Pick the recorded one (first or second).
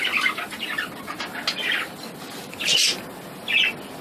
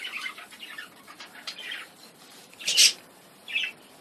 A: first